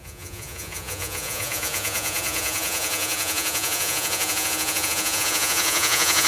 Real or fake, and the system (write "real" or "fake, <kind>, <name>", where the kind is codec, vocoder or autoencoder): fake, vocoder, Vocos